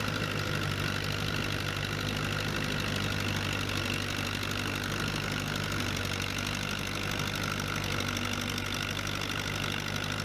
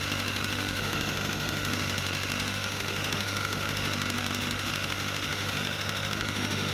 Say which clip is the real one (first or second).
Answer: first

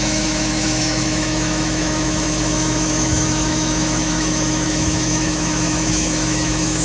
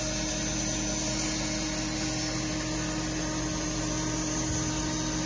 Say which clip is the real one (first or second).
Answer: second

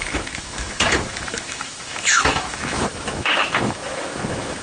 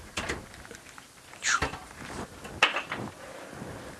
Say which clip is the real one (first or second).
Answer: second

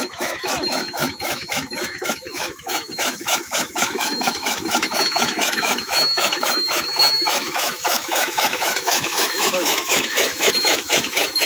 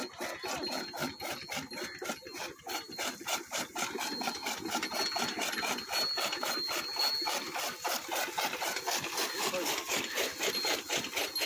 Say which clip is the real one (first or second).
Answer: second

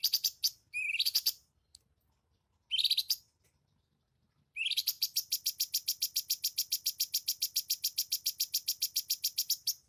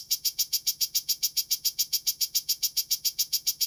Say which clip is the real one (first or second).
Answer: first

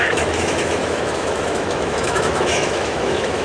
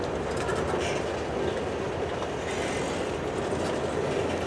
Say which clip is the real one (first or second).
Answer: second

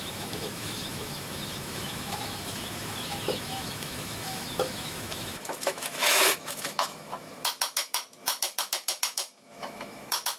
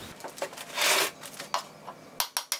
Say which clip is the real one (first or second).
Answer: second